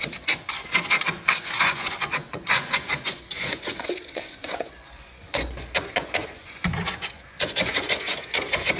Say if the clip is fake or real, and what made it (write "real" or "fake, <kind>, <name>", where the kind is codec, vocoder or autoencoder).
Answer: fake, vocoder, Vocos